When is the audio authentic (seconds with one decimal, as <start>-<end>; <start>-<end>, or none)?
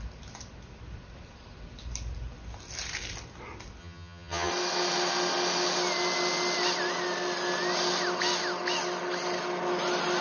0.0-3.8; 4.5-10.2